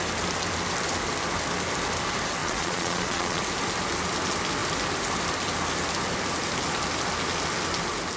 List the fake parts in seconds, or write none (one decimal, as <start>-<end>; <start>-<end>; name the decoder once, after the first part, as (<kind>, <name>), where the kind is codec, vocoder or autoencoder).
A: 2.4-3.4 (vocoder, Vocos)